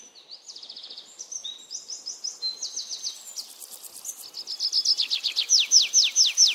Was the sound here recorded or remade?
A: recorded